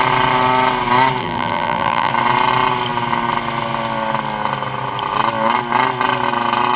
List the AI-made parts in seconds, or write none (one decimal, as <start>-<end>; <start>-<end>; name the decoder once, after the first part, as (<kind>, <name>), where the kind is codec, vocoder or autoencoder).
1.2-2.1 (vocoder, BigVGAN v2)